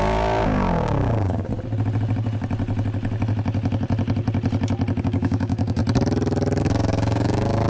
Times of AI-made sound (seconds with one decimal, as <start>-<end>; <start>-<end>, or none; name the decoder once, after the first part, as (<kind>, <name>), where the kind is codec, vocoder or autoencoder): 0.0-1.5 (codec, DAC); 5.0-5.8; 6.6-7.7